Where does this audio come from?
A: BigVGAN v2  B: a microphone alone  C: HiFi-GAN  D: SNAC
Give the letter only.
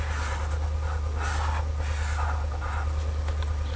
B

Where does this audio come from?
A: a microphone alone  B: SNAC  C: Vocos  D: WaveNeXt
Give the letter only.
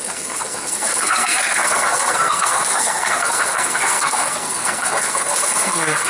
B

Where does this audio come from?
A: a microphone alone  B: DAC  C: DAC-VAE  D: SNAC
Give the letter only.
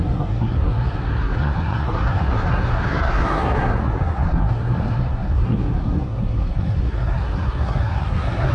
D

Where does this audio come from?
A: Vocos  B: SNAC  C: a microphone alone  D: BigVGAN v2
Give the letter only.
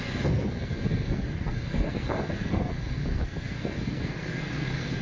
B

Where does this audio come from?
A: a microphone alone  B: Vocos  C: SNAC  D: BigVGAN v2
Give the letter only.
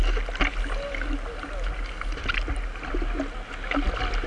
A